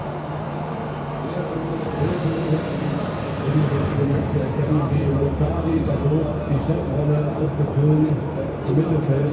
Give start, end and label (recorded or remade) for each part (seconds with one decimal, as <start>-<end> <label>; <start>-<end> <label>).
0.0-9.3 remade

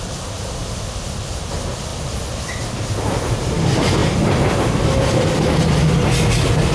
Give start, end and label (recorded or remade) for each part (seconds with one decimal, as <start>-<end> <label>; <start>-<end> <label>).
0.0-4.0 recorded; 4.0-5.3 remade; 5.3-6.7 recorded

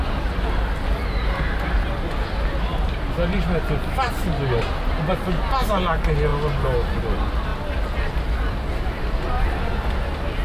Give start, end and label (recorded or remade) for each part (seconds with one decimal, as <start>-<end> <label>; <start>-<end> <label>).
0.0-10.4 recorded

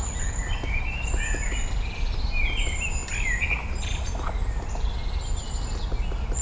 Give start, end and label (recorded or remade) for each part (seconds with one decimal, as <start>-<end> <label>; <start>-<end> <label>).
0.0-3.0 recorded; 3.0-4.4 remade; 4.4-6.4 recorded

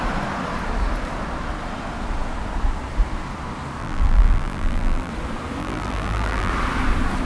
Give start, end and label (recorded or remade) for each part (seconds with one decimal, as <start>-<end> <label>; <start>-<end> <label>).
0.0-3.8 recorded; 3.8-5.1 remade; 5.1-5.6 recorded; 5.6-6.5 remade; 6.5-7.3 recorded

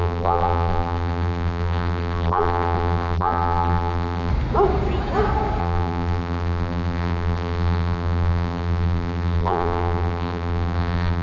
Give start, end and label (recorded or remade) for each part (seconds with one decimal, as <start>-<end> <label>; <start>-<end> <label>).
0.0-4.3 remade; 4.3-5.6 recorded; 5.6-11.2 remade

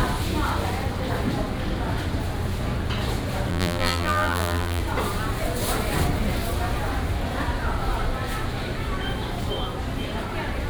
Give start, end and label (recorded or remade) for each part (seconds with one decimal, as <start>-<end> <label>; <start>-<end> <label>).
0.0-3.5 recorded; 3.5-4.8 remade; 4.8-10.7 recorded

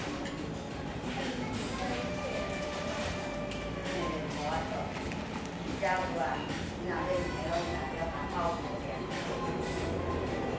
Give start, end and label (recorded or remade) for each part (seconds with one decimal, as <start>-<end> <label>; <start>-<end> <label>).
0.0-3.8 remade; 3.8-6.7 recorded; 6.7-7.7 remade; 7.7-8.3 recorded; 8.3-10.6 remade